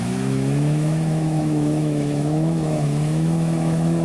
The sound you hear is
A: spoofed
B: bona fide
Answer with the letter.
A